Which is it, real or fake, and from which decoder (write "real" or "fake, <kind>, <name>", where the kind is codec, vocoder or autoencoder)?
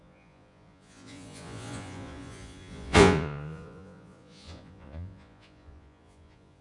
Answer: fake, vocoder, Vocos